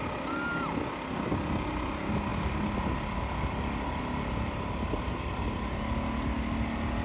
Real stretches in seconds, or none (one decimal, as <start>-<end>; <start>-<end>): 0.0-7.0